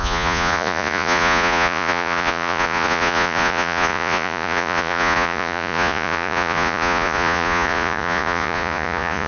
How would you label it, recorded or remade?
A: remade